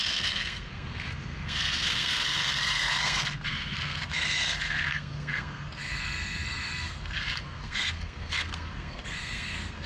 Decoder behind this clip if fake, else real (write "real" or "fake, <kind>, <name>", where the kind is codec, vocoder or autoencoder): fake, codec, SNAC